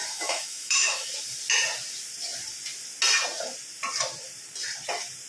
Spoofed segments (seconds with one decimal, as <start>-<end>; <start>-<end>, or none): 0.0-1.1